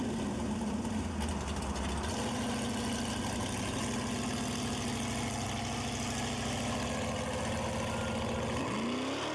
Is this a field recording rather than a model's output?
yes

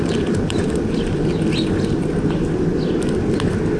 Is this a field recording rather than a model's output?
yes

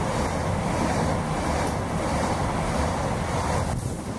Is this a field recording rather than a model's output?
yes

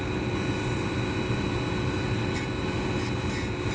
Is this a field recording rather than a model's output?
no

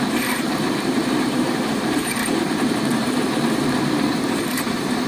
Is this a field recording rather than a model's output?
no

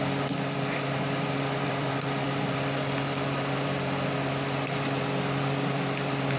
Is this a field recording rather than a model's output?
no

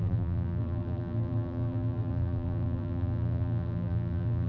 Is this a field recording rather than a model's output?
no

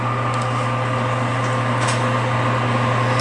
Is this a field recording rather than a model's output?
yes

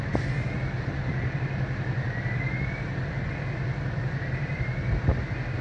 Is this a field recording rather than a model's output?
no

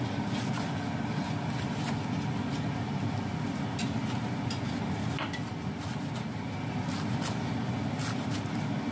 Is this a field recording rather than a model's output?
yes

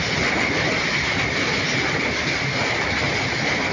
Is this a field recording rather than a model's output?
yes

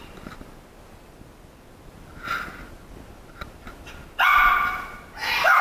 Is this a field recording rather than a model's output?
yes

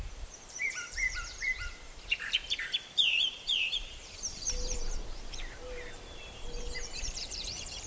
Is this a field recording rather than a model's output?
no